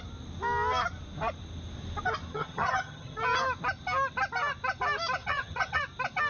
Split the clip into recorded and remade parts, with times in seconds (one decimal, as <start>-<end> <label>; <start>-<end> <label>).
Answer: 0.0-2.3 recorded; 2.3-3.2 remade; 3.2-5.2 recorded; 5.2-5.8 remade; 5.8-6.3 recorded